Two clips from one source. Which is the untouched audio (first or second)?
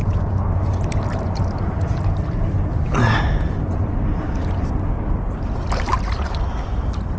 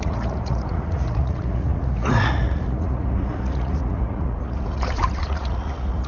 first